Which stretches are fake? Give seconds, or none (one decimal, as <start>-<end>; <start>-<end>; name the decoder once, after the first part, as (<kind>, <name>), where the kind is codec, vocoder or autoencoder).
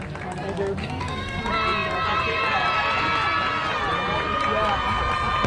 0.8-1.4 (codec, SNAC)